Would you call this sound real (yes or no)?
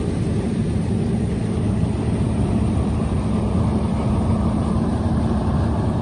no